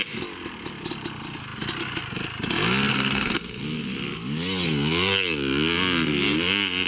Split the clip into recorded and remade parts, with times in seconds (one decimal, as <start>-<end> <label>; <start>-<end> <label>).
0.0-2.9 recorded; 2.9-3.6 remade; 3.6-6.9 recorded